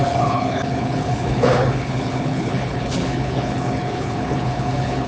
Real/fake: fake